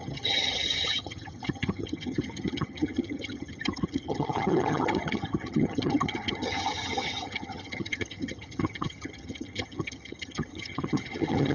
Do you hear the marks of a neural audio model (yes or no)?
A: yes